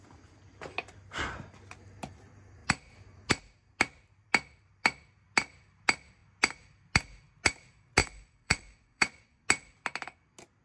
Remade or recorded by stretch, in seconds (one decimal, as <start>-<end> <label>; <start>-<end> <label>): 0.0-8.0 recorded; 8.0-9.4 remade; 9.4-10.6 recorded